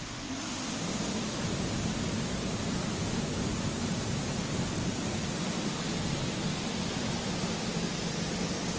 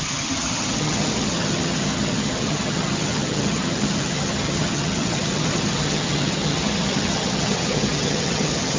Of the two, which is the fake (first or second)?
second